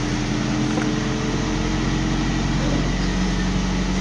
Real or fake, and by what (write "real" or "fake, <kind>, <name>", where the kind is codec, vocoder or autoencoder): real